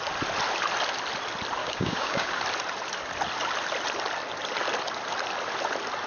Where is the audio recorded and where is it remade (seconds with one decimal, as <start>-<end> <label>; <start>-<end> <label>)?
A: 0.0-1.6 recorded; 1.6-2.4 remade; 2.4-6.1 recorded